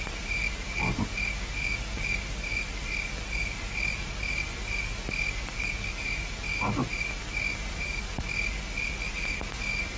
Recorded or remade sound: recorded